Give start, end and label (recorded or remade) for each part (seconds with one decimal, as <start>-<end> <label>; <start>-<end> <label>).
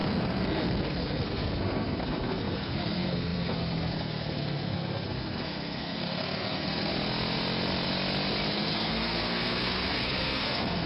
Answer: 0.0-6.9 remade; 6.9-8.5 recorded; 8.5-10.9 remade